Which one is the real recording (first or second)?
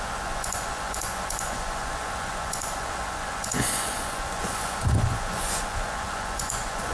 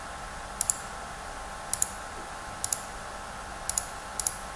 second